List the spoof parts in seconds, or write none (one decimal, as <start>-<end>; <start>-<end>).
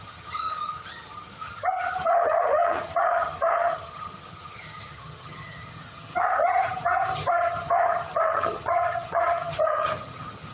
0.0-10.5